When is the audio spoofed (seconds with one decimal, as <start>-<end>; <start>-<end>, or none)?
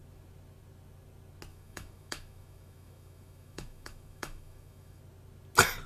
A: 1.5-5.0